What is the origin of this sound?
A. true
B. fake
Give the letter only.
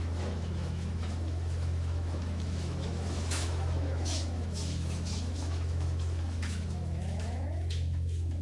B